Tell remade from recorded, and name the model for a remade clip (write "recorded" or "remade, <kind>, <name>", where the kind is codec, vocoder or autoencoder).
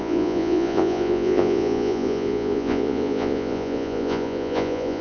remade, vocoder, Vocos